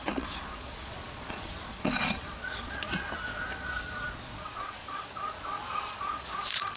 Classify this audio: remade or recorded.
remade